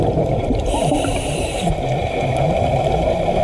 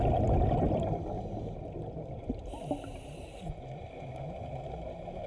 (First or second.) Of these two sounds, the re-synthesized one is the first